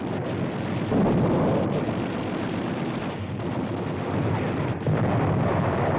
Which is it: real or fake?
real